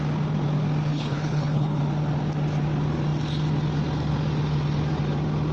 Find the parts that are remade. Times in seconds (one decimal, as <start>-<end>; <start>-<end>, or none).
0.9-1.8